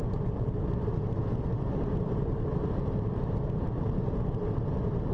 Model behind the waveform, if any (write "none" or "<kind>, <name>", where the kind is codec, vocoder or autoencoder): none